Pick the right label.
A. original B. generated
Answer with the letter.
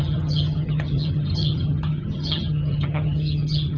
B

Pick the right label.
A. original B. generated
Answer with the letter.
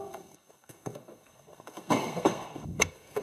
B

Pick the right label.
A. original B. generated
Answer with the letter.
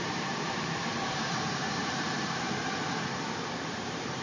B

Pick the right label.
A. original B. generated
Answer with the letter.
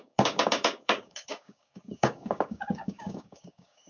B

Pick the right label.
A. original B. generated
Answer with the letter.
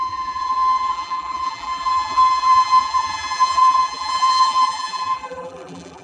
B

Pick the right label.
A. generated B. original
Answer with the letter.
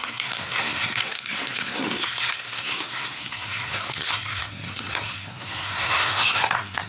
A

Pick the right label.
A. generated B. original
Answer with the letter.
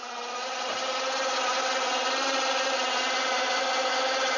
B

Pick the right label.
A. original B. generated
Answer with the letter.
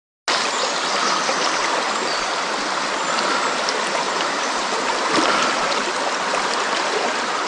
A